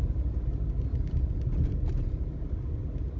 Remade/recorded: recorded